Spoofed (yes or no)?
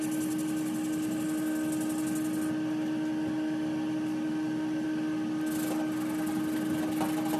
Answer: no